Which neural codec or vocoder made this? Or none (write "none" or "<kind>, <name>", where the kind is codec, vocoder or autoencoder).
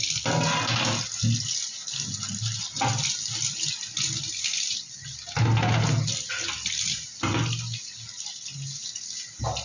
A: none